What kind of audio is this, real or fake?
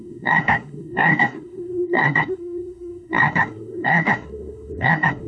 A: fake